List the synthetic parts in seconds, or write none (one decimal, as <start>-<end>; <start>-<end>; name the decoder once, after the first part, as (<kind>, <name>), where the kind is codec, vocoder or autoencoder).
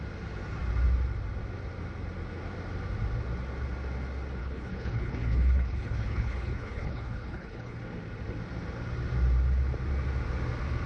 4.4-7.8 (codec, HILCodec)